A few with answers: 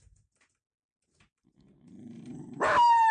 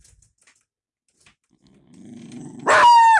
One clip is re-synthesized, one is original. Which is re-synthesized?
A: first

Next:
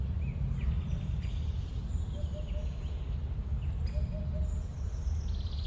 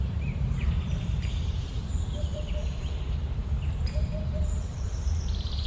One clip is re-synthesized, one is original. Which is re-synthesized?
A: second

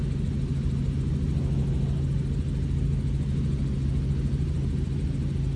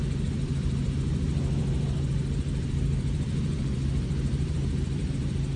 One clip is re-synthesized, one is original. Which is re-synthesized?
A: second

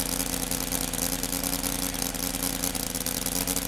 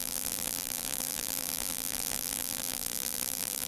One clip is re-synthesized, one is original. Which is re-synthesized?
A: second